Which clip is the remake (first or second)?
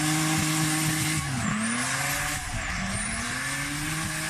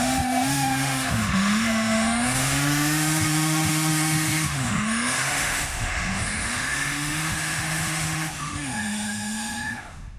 second